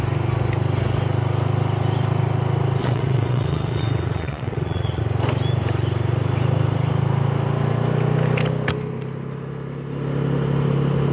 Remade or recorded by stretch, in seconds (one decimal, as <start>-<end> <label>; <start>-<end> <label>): 0.0-2.8 recorded; 2.8-5.0 remade; 5.0-11.1 recorded